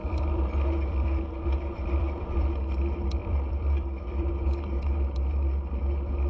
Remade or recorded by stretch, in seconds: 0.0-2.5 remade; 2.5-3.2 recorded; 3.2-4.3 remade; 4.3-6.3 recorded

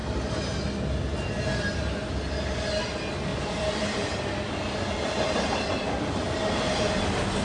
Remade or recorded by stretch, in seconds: 0.0-3.3 recorded; 3.3-4.1 remade; 4.1-7.4 recorded

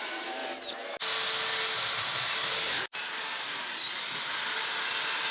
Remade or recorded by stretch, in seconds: 0.0-0.4 remade; 0.4-2.0 recorded; 2.0-5.3 remade